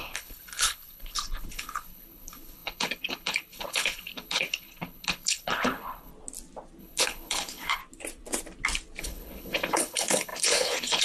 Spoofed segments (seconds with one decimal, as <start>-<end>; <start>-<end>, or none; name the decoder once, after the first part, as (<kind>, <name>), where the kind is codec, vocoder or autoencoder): 0.0-6.1 (codec, HILCodec); 6.8-7.8; 9.0-11.0